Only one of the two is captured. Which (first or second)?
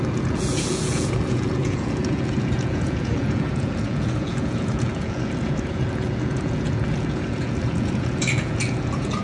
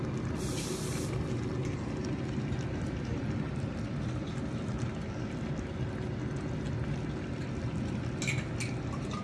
second